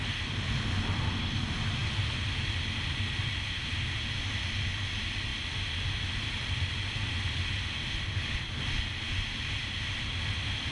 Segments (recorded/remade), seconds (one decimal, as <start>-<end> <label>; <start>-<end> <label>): 0.0-10.7 recorded